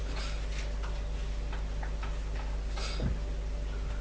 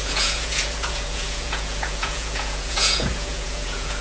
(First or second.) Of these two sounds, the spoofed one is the second